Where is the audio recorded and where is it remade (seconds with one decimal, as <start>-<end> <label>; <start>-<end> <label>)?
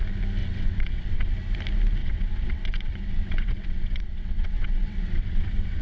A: 0.0-0.4 recorded; 0.4-1.3 remade; 1.3-2.0 recorded; 2.0-5.8 remade